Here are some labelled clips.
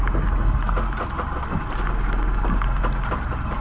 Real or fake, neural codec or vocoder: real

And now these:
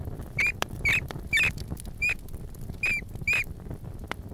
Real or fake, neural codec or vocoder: real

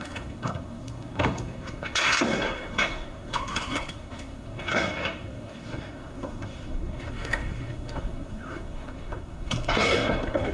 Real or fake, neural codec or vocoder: fake, codec, SNAC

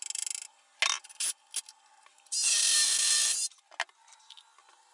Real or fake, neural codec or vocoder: real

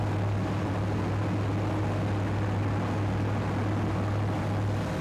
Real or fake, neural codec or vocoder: real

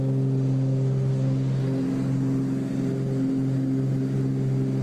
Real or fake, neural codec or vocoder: real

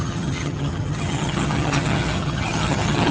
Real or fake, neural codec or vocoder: fake, vocoder, HiFi-GAN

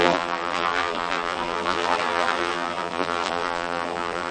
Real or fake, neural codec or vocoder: fake, vocoder, BigVGAN v2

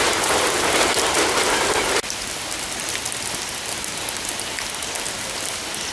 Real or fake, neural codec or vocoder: real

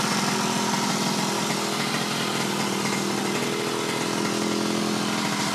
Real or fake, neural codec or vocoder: real